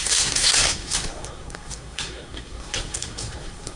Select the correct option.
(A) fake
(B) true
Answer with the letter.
A